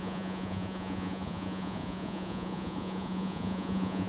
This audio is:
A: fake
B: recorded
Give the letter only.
A